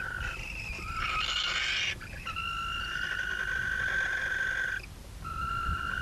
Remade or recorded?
recorded